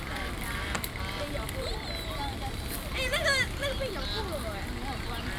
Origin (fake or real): real